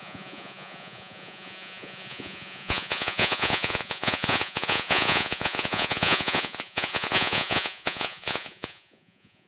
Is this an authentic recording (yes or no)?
no